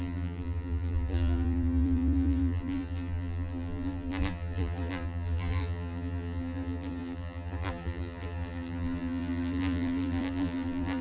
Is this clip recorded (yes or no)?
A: no